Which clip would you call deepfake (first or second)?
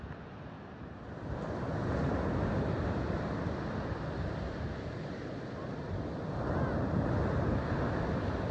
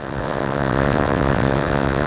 second